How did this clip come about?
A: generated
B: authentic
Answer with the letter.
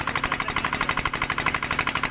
B